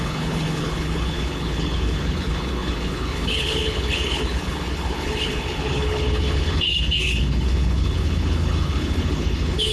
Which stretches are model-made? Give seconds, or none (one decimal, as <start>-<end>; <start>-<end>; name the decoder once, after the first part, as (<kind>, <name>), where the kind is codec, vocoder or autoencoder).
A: 0.0-9.7 (codec, HILCodec)